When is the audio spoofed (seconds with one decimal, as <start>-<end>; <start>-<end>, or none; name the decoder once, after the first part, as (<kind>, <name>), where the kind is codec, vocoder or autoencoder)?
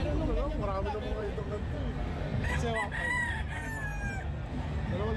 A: 1.1-1.8 (vocoder, Vocos)